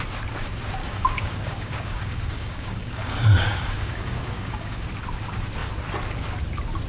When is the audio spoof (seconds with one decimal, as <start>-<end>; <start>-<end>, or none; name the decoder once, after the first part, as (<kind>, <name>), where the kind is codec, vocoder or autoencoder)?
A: 0.8-4.9 (codec, DAC)